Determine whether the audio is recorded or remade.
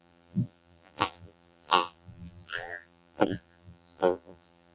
remade